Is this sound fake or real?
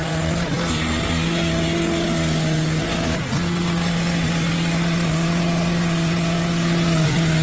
real